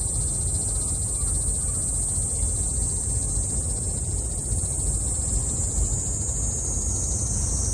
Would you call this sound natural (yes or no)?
yes